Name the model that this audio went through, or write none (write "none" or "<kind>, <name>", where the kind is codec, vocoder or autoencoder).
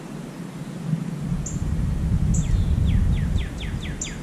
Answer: none